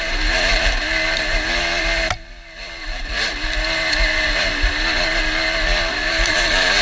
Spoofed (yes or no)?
yes